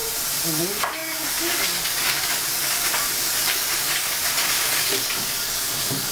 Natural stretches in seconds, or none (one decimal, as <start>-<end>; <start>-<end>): 0.0-0.6

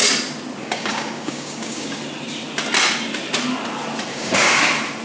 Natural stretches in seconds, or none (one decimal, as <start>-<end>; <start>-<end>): 0.0-0.6; 2.0-4.1; 4.6-5.0

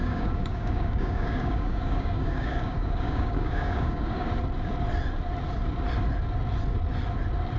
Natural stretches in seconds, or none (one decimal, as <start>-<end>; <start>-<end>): 4.3-7.6